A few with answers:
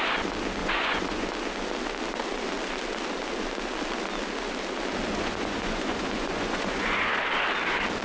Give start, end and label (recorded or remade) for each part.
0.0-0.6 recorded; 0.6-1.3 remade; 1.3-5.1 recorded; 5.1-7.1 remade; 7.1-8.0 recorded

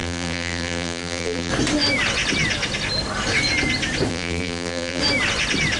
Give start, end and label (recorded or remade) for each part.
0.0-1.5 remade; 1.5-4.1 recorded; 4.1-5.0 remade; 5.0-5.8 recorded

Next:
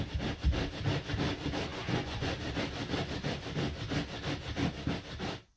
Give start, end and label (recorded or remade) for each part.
0.0-1.7 recorded; 1.7-2.3 remade; 2.3-5.6 recorded

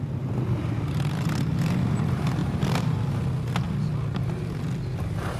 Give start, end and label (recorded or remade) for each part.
0.0-2.4 recorded; 2.4-3.2 remade; 3.2-5.4 recorded

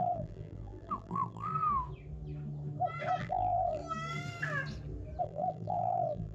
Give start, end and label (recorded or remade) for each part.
0.0-1.5 remade; 1.5-3.2 recorded; 3.2-3.8 remade; 3.8-5.2 recorded; 5.2-6.3 remade